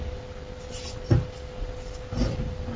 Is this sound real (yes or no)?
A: yes